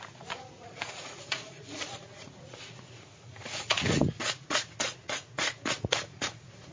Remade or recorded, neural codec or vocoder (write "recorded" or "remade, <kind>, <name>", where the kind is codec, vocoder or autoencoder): remade, vocoder, Vocos